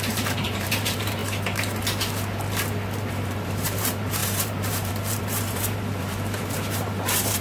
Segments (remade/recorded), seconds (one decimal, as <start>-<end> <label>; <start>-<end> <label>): 0.0-1.2 remade; 1.2-3.1 recorded; 3.1-7.4 remade